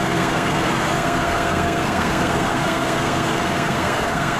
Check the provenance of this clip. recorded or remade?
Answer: remade